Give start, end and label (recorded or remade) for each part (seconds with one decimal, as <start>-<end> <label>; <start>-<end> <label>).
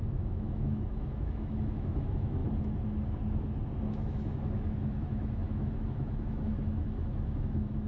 0.0-2.4 remade; 2.4-3.9 recorded; 3.9-7.9 remade